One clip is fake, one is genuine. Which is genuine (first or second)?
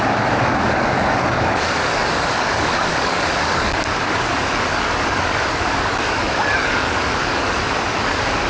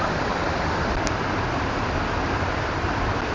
second